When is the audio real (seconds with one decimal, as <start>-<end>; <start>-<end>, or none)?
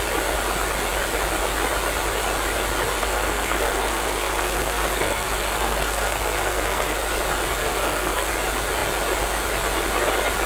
0.0-3.0; 7.1-7.6; 8.3-10.5